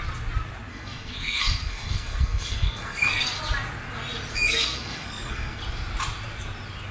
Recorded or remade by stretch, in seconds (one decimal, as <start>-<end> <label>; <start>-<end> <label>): 0.0-0.7 recorded; 0.7-3.4 remade; 3.4-4.3 recorded; 4.3-5.6 remade; 5.6-6.9 recorded